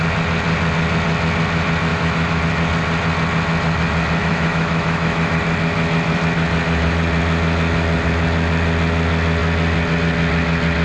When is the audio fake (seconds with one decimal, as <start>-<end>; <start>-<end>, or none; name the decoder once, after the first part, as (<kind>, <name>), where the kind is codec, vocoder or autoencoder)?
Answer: 1.9-2.4 (autoencoder, DAC-VAE); 4.2-5.4